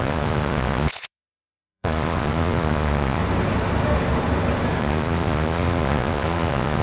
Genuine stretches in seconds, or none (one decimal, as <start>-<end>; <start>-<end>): 3.2-4.8